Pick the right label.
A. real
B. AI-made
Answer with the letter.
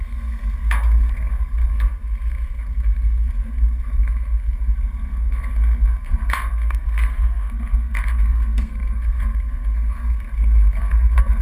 B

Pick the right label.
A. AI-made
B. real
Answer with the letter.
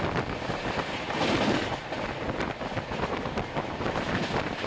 B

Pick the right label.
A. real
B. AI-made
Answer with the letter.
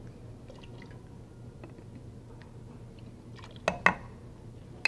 A